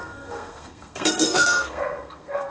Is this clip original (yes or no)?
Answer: no